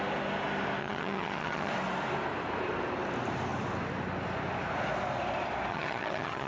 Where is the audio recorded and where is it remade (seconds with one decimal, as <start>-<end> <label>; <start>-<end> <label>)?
0.0-0.8 recorded; 0.8-1.7 remade; 1.7-5.7 recorded; 5.7-6.5 remade